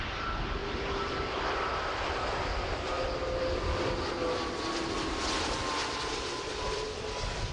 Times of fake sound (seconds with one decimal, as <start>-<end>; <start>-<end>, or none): 0.6-2.8; 5.8-7.0